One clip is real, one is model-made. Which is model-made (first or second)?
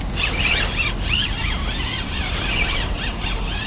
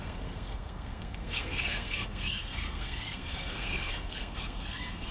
second